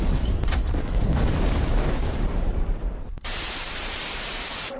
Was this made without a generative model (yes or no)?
no